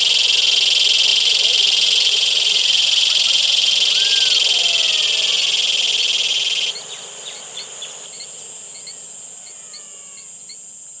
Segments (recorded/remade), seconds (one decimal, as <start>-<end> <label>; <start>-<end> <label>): 0.0-1.1 recorded; 1.1-4.1 remade; 4.1-11.0 recorded